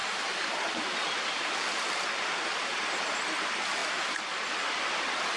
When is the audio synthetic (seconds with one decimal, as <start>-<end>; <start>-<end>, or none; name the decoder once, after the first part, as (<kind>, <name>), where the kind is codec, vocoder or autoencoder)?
none